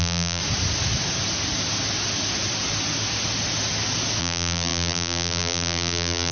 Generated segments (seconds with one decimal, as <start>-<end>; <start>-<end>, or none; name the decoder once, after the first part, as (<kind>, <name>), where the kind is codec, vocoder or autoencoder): 0.0-0.4 (vocoder, BigVGAN v2); 4.2-6.3